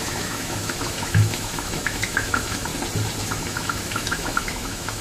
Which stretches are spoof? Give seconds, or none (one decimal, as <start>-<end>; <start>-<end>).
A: 0.0-2.7; 3.2-5.0